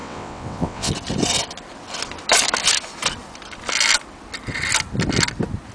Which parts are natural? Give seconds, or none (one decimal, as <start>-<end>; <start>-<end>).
0.9-5.7